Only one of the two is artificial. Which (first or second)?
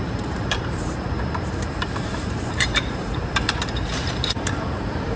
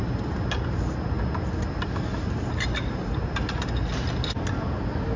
first